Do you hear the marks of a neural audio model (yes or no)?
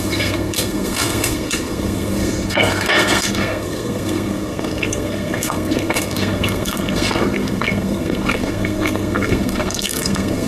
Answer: yes